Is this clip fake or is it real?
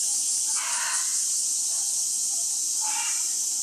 real